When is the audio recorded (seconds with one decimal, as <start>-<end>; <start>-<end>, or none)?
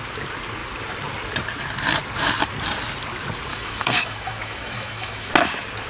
0.0-3.5; 5.3-5.9